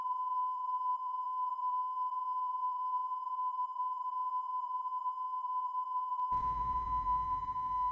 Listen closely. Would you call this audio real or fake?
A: fake